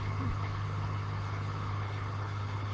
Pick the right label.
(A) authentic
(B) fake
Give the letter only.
B